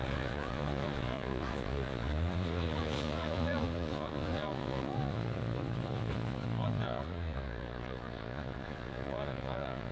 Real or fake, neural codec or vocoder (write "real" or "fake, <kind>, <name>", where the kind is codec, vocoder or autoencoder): fake, vocoder, Vocos